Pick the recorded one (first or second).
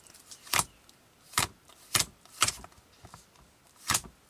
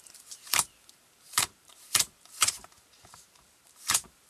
first